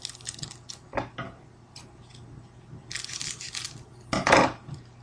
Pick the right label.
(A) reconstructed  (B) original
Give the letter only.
B